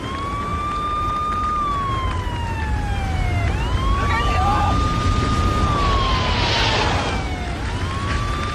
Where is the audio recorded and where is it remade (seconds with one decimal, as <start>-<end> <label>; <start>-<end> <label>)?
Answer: 0.0-8.5 recorded